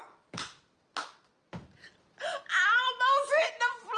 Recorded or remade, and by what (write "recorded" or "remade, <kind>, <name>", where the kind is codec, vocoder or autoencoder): recorded